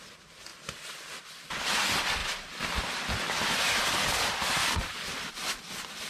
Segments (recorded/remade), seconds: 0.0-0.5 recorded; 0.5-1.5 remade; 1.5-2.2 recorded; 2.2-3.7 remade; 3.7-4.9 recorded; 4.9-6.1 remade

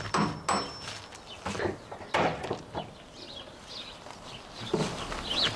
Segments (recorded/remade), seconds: 0.0-5.6 recorded

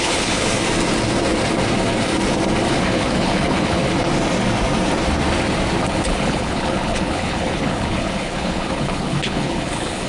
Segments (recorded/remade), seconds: 0.0-0.5 remade; 0.5-2.7 recorded; 2.7-3.8 remade; 3.8-5.9 recorded; 5.9-10.1 remade